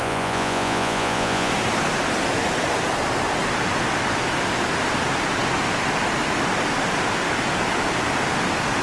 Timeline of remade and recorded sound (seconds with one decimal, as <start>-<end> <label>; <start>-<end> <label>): 0.0-1.5 remade; 1.5-8.8 recorded